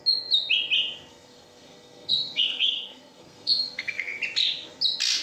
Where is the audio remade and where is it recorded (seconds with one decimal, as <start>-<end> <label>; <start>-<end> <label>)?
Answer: 0.0-1.1 recorded; 1.1-4.2 remade; 4.2-5.2 recorded

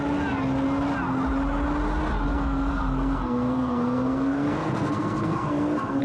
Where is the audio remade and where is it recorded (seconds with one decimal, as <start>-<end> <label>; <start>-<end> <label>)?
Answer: 0.0-2.3 recorded; 2.3-6.0 remade

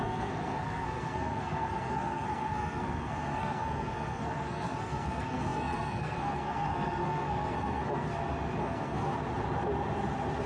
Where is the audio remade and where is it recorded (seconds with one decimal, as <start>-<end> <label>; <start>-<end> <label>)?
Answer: 0.0-8.1 remade; 8.1-8.6 recorded; 8.6-9.1 remade; 9.1-10.5 recorded

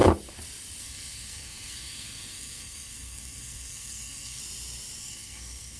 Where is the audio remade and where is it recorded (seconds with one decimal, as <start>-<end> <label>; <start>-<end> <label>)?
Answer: 0.0-0.8 recorded; 0.8-4.4 remade; 4.4-5.0 recorded; 5.0-5.8 remade

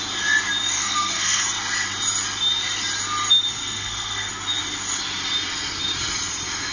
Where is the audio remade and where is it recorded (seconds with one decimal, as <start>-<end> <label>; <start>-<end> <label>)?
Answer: 0.0-0.7 recorded; 0.7-1.4 remade; 1.4-3.6 recorded; 3.6-4.3 remade; 4.3-6.7 recorded

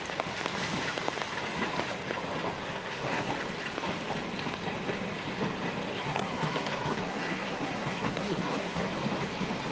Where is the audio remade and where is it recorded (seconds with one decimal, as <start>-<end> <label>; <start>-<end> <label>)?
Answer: 0.0-2.6 recorded; 2.6-3.3 remade; 3.3-5.9 recorded; 5.9-8.9 remade; 8.9-9.7 recorded

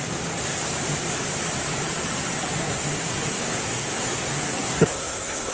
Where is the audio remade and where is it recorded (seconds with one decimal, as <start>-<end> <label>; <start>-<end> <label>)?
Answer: 0.0-2.6 recorded; 2.6-5.5 remade